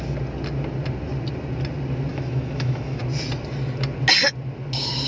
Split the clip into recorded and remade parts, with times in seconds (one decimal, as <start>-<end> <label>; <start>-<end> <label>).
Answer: 0.0-2.1 recorded; 2.1-3.0 remade; 3.0-5.1 recorded